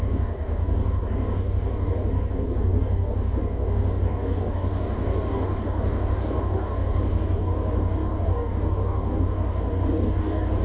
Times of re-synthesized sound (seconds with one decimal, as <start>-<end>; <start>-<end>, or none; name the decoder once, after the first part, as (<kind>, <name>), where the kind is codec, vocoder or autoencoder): 0.0-10.6 (codec, DAC)

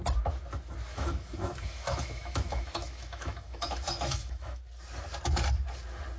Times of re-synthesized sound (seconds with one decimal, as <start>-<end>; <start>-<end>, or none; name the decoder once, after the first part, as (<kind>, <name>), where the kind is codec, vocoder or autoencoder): 0.9-4.6 (autoencoder, DAC-VAE)

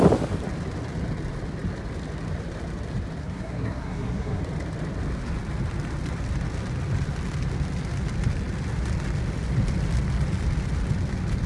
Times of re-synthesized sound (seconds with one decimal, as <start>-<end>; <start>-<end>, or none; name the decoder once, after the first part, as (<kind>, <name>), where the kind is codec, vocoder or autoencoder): 3.2-4.4 (codec, SNAC)

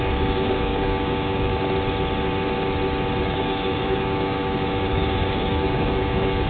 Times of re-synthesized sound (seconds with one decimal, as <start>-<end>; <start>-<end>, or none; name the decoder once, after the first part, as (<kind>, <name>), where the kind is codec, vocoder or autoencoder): 0.0-1.5 (codec, DAC); 3.2-6.5

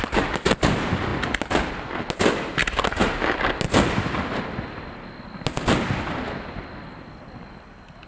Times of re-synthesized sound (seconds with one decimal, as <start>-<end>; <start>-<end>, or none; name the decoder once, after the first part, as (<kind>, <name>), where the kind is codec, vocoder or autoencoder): none

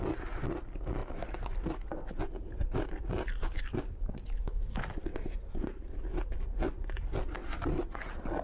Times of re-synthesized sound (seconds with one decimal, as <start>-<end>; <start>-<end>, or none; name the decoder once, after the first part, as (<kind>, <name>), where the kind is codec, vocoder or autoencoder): 3.4-4.7 (codec, DAC)

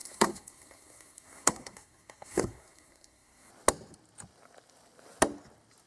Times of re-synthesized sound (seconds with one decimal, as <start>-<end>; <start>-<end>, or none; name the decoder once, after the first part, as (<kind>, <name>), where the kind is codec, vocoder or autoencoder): 0.0-3.5 (codec, SNAC)

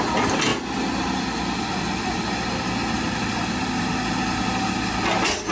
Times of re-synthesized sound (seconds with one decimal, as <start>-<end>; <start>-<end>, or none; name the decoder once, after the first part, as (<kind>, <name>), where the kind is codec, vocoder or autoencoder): none